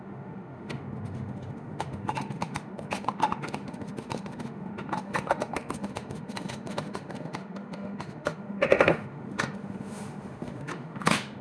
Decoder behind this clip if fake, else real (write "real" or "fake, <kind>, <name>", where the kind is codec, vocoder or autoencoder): fake, autoencoder, DAC-VAE